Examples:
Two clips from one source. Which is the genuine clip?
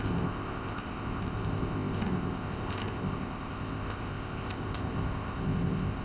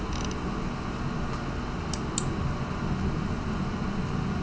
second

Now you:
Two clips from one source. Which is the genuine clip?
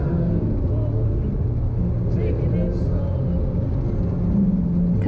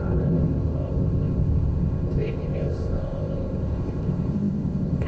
first